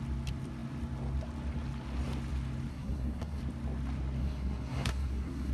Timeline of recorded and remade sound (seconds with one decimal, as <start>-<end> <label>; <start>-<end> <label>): 0.0-2.7 recorded; 2.7-3.4 remade; 3.4-4.2 recorded; 4.2-5.5 remade